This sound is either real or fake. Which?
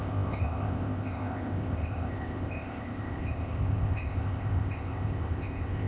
fake